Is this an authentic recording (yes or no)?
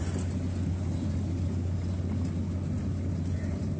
yes